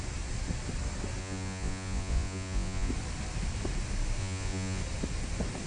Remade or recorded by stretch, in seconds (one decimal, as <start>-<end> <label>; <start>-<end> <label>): 0.0-1.2 recorded; 1.2-2.9 remade; 2.9-4.2 recorded; 4.2-4.8 remade; 4.8-5.7 recorded